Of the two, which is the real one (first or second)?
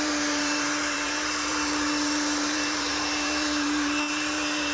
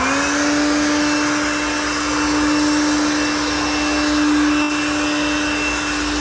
second